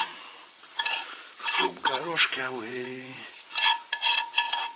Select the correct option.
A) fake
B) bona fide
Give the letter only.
A